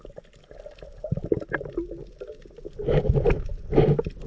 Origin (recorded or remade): recorded